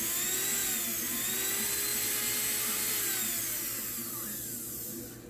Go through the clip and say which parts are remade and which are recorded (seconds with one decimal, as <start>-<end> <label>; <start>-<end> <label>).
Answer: 0.0-5.3 recorded